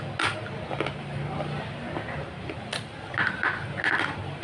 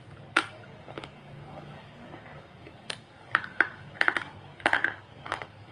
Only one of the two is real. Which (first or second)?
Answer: first